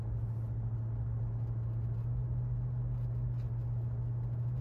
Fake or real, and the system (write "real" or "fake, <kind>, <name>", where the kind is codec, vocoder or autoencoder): real